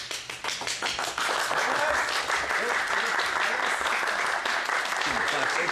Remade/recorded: recorded